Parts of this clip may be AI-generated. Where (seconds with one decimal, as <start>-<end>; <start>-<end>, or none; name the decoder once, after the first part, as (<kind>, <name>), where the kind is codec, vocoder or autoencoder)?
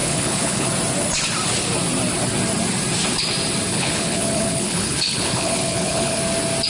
0.0-0.7 (codec, HILCodec); 3.7-6.2